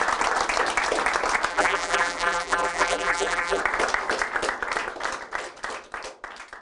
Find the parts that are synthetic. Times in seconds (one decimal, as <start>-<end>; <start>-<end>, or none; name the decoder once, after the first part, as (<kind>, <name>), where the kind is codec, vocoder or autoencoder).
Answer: 1.5-3.6 (vocoder, BigVGAN v2)